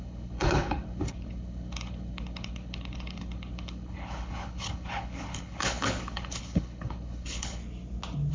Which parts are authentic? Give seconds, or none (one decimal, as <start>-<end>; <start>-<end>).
7.6-8.3